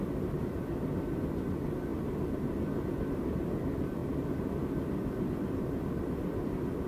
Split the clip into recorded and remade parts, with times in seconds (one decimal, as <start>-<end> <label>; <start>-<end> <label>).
0.0-6.9 recorded

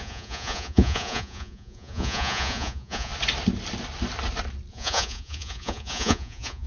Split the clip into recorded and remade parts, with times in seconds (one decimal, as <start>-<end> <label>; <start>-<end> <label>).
0.0-3.1 remade; 3.1-4.7 recorded; 4.7-6.7 remade

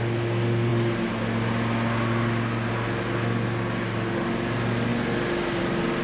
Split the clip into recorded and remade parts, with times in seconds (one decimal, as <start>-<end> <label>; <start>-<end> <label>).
0.0-6.0 recorded

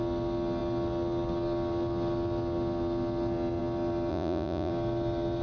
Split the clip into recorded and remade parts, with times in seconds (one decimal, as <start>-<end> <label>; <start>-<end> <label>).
0.0-4.1 recorded; 4.1-4.7 remade; 4.7-5.4 recorded

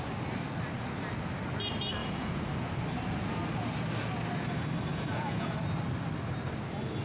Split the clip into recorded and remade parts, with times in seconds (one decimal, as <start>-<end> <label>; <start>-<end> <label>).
0.0-2.0 recorded; 2.0-2.7 remade; 2.7-4.9 recorded; 4.9-5.5 remade; 5.5-7.0 recorded

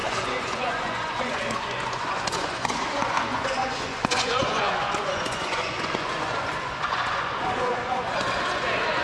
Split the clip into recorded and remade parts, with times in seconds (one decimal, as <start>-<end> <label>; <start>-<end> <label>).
0.0-9.0 remade

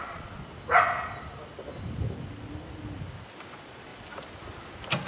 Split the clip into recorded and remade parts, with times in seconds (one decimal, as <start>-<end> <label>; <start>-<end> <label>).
0.0-0.4 remade; 0.4-3.5 recorded; 3.5-3.9 remade; 3.9-5.1 recorded